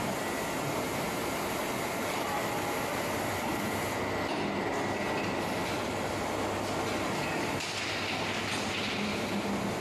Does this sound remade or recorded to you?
recorded